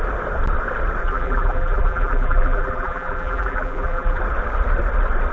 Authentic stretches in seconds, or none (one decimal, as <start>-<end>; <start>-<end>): 0.0-1.0; 4.2-5.3